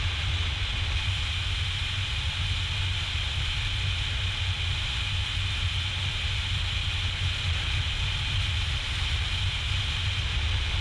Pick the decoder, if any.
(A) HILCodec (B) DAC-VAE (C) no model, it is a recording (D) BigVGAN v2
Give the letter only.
C